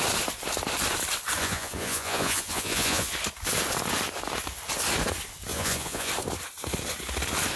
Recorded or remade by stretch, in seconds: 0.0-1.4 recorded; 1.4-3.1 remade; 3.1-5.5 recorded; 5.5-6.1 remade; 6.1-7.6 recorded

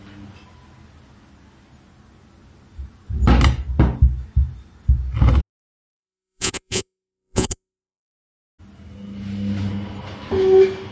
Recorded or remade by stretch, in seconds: 0.0-5.4 recorded; 5.4-8.6 remade; 8.6-10.9 recorded